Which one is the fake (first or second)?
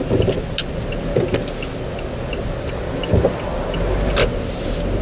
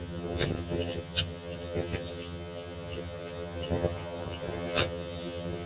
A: second